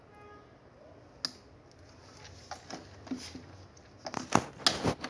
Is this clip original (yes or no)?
yes